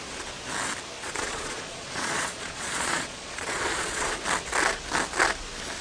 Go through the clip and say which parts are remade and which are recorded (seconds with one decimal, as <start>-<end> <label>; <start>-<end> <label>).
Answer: 0.0-1.0 recorded; 1.0-4.2 remade; 4.2-5.8 recorded